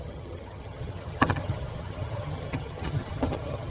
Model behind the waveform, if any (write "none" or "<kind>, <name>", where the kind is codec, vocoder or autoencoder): vocoder, HiFi-GAN